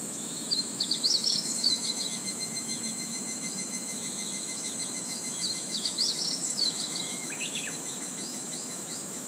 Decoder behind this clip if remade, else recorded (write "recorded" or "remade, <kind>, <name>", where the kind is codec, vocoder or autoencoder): remade, autoencoder, DAC-VAE